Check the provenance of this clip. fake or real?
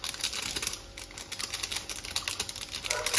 real